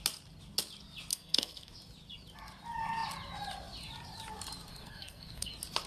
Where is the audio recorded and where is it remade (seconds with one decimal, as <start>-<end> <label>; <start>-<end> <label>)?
0.0-1.1 recorded; 1.1-1.7 remade; 1.7-4.7 recorded; 4.7-5.5 remade; 5.5-5.9 recorded